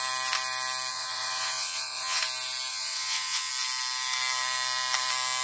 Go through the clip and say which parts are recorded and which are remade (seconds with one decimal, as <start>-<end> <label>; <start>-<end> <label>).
0.0-0.9 recorded; 0.9-2.2 remade; 2.2-2.7 recorded; 2.7-3.5 remade; 3.5-5.4 recorded